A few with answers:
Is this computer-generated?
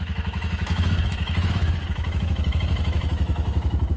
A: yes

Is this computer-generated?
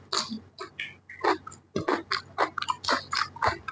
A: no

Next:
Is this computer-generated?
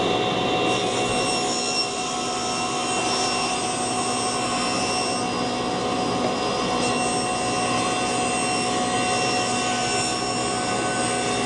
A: no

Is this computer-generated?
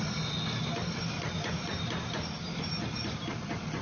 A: no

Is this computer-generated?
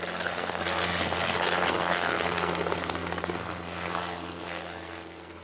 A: yes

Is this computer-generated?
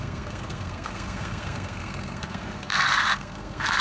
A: yes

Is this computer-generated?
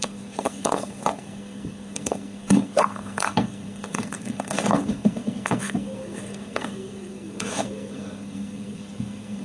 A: yes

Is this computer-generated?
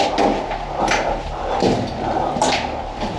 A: no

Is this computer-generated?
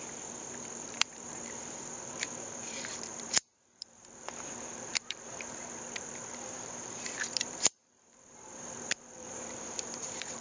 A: yes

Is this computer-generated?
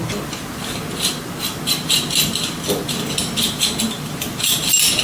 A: no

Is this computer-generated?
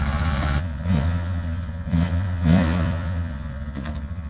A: yes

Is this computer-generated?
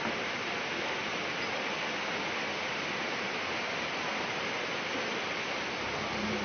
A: no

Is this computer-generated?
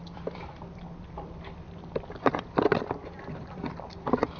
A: yes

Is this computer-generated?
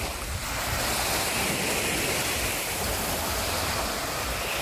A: no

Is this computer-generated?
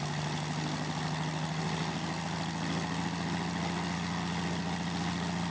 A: no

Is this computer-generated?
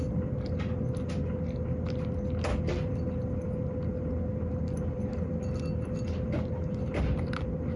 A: no